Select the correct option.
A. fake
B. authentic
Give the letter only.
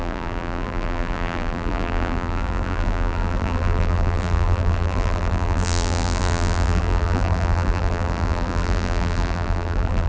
A